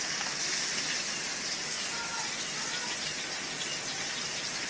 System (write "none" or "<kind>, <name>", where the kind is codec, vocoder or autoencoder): none